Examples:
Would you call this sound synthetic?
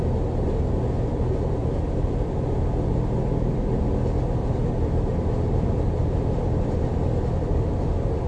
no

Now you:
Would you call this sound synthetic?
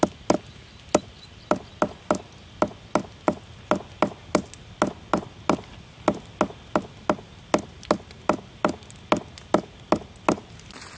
no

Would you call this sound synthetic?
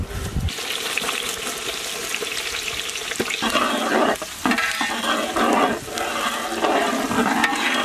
no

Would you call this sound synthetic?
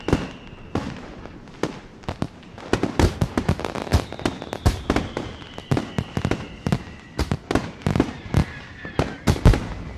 no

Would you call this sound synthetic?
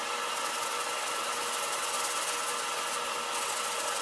no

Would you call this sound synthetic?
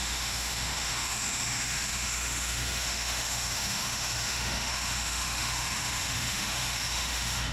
yes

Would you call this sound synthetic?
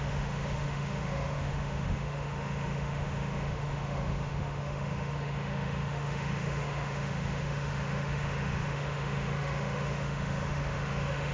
yes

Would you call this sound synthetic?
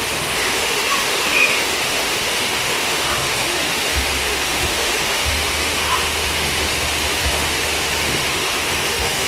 yes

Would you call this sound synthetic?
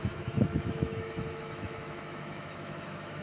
yes